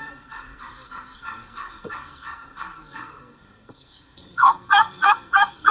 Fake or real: fake